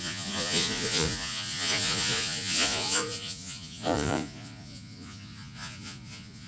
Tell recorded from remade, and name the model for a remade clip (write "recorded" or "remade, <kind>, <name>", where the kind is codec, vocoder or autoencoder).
remade, vocoder, Vocos